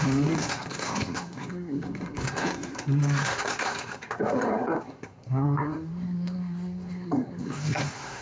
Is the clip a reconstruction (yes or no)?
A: yes